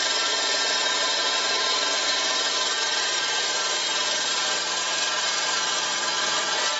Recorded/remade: remade